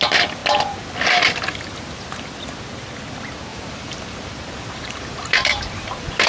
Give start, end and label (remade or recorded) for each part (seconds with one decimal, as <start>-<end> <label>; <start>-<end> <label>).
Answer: 0.0-3.5 recorded; 3.5-6.3 remade